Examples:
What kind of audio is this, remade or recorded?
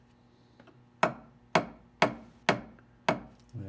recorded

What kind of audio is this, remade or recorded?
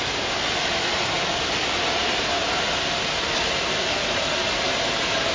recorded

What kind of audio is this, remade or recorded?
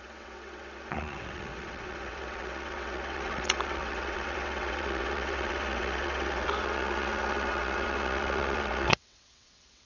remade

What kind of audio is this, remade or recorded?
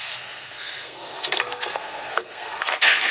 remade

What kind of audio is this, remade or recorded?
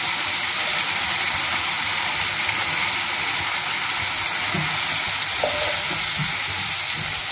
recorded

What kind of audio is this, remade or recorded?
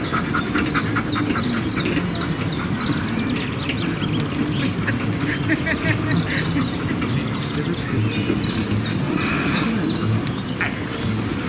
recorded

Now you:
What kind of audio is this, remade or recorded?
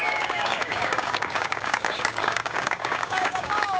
remade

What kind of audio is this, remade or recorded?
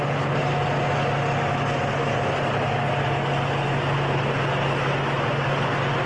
recorded